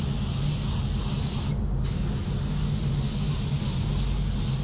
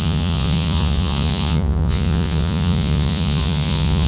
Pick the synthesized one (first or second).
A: second